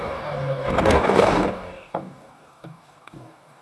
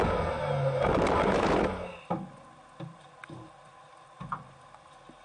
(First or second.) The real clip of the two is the second